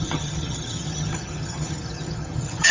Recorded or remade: remade